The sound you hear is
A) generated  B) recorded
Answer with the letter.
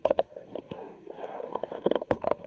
A